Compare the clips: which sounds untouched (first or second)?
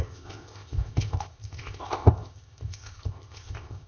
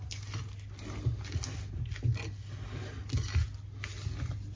second